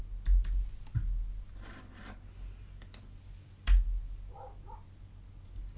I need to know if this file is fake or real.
real